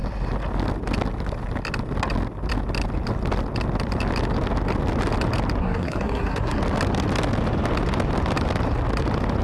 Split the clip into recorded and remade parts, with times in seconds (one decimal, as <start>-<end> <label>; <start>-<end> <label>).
0.0-5.6 recorded; 5.6-6.6 remade; 6.6-9.4 recorded